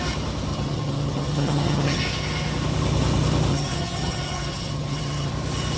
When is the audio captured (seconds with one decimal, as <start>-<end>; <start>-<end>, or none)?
0.0-0.5; 2.0-3.5; 5.3-5.8